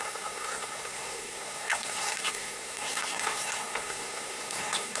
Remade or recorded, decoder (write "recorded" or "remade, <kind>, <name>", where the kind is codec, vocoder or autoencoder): remade, codec, SNAC